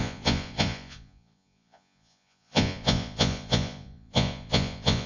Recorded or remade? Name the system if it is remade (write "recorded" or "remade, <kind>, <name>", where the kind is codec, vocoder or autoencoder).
remade, vocoder, Vocos